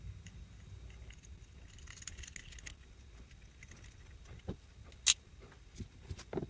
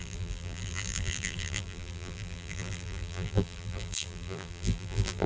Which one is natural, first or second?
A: first